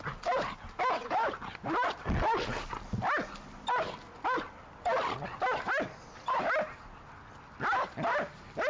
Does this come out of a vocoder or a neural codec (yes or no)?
no